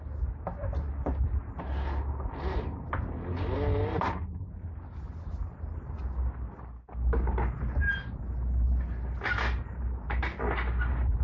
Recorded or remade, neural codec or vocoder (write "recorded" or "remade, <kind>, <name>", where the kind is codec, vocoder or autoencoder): recorded